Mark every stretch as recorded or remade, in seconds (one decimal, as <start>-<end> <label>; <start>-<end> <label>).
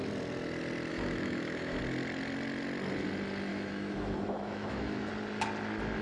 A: 0.0-0.9 recorded; 0.9-1.8 remade; 1.8-3.5 recorded; 3.5-5.1 remade; 5.1-6.0 recorded